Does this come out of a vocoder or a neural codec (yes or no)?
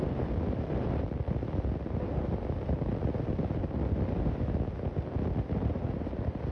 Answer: no